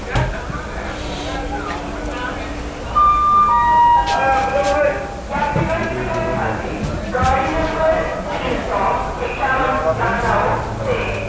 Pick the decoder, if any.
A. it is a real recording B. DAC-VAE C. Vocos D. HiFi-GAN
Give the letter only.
A